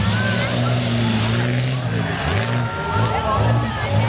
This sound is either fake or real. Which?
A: real